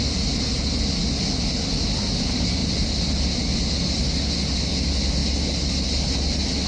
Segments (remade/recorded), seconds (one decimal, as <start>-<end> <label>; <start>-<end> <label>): 0.0-6.7 recorded